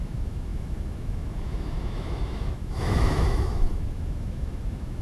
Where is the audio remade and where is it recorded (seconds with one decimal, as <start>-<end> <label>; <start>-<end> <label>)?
0.0-5.0 remade

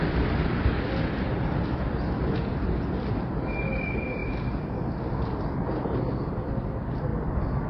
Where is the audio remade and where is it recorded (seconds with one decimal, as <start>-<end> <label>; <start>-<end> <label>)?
0.0-7.7 recorded

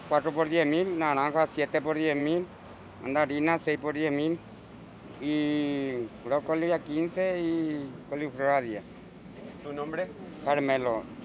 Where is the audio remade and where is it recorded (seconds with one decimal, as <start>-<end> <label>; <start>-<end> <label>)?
0.0-2.2 remade; 2.2-3.6 recorded; 3.6-4.9 remade; 4.9-6.0 recorded; 6.0-11.2 remade

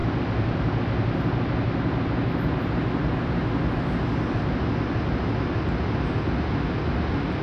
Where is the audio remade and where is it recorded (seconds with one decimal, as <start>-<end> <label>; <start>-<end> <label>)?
0.0-7.4 recorded

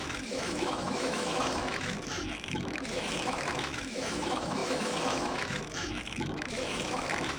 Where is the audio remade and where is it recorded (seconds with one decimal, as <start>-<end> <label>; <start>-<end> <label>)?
0.0-7.4 remade

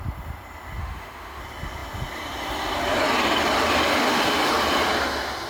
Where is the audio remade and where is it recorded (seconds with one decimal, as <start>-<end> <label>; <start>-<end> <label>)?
0.0-0.8 recorded; 0.8-1.4 remade; 1.4-3.9 recorded; 3.9-4.5 remade; 4.5-5.5 recorded

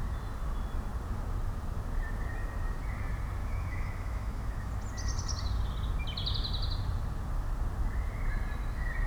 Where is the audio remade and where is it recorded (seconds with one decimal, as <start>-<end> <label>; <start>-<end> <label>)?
0.0-3.4 recorded; 3.4-4.7 remade; 4.7-9.1 recorded

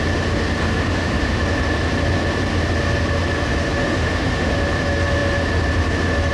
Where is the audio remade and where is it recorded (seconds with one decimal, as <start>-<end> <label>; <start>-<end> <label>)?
0.0-0.7 recorded; 0.7-1.4 remade; 1.4-3.9 recorded; 3.9-4.5 remade; 4.5-6.3 recorded